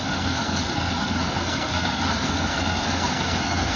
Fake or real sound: fake